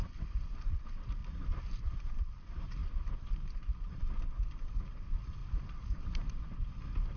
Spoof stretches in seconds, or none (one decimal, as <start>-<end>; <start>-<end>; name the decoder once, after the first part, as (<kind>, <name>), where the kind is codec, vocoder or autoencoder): 1.2-2.2 (vocoder, BigVGAN v2); 2.8-4.0; 5.4-6.3